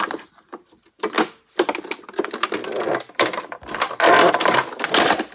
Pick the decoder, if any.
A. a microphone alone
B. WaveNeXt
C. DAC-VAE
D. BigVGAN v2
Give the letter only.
A